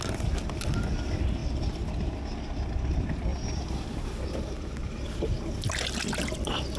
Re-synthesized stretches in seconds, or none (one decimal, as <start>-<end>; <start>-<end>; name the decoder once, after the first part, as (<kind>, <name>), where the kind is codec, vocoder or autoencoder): 3.3-4.7 (vocoder, BigVGAN v2)